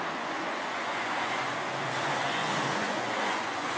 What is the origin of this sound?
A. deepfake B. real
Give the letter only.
A